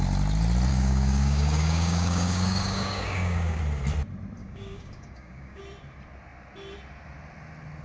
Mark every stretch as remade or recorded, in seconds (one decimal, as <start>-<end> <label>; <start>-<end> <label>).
0.0-0.7 recorded; 0.7-3.6 remade; 3.6-4.4 recorded; 4.4-5.6 remade; 5.6-7.8 recorded